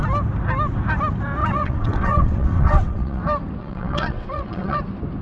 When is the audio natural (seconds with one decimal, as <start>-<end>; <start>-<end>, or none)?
0.0-1.4; 3.2-3.6; 4.8-5.2